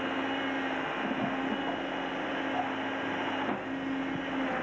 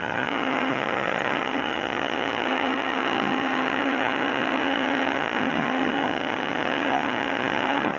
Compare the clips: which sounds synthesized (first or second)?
second